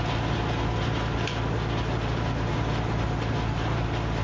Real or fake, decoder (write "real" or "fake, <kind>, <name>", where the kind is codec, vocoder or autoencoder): real